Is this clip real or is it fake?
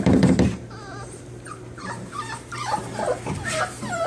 fake